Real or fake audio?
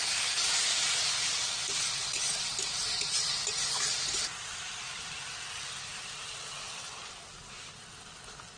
real